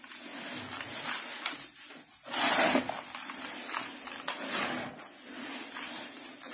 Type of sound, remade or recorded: recorded